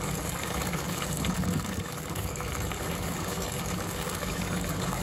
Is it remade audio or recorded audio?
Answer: remade